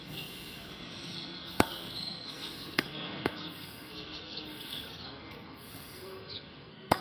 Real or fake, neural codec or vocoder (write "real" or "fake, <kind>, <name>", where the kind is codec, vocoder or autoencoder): fake, codec, SNAC